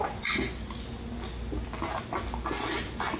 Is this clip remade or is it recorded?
recorded